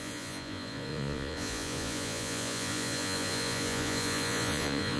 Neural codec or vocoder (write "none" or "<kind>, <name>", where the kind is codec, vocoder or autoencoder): vocoder, Vocos